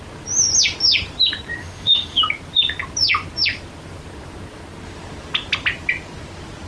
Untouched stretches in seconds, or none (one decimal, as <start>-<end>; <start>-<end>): 0.0-1.6; 2.2-6.7